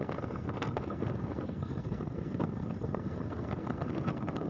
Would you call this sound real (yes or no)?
no